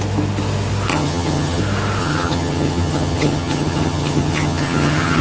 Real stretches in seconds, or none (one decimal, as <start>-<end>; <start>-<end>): 0.0-0.9; 1.6-2.0